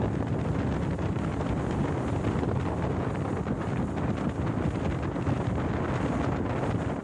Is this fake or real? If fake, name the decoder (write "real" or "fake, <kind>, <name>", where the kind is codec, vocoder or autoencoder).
real